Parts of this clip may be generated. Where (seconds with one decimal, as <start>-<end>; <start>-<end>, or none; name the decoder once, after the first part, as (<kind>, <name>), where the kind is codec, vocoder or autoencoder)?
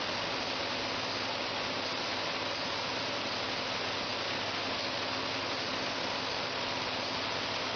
none